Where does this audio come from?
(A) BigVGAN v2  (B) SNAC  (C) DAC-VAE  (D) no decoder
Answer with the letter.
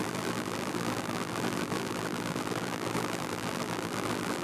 A